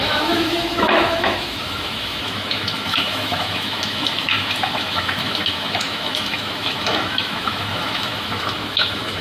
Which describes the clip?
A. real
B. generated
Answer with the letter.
B